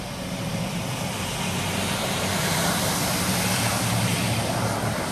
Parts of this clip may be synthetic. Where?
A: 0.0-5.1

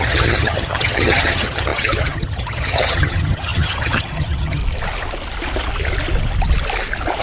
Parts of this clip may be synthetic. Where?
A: 0.0-4.6

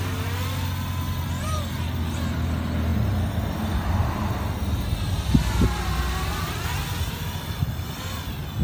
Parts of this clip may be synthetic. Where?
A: none

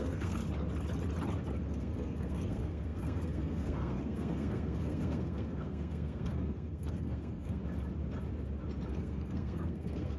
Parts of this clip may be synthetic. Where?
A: 0.0-0.4; 1.7-7.6; 8.9-10.2

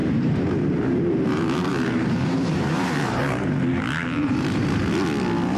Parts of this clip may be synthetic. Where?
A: 0.0-3.2; 4.2-4.8

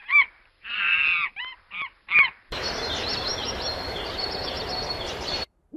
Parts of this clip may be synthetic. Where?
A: 0.0-5.8

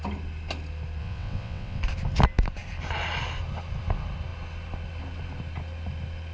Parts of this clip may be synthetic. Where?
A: 1.0-1.8